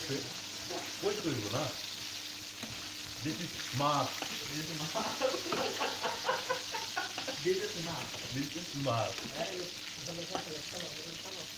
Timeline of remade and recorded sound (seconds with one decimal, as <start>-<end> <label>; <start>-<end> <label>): 0.0-1.1 remade; 1.1-5.1 recorded; 5.1-6.5 remade; 6.5-7.2 recorded; 7.2-8.3 remade; 8.3-11.6 recorded